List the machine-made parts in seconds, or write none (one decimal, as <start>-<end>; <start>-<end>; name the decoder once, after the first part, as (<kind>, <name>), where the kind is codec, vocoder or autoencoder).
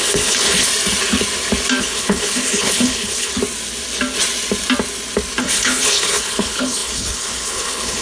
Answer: 0.0-0.7 (codec, HILCodec); 1.8-3.3; 5.4-8.0